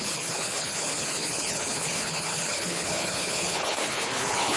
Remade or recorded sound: remade